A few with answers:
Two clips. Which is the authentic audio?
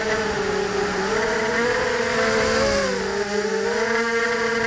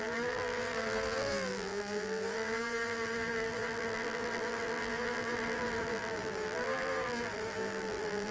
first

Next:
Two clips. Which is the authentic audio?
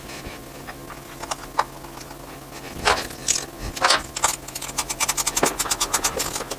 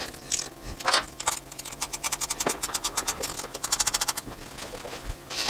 first